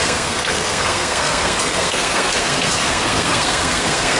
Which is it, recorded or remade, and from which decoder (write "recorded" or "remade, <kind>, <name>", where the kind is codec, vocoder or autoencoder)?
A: remade, codec, SNAC